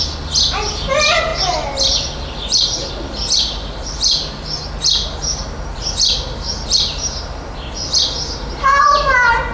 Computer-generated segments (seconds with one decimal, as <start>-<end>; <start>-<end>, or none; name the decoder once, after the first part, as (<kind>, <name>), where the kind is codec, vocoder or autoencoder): none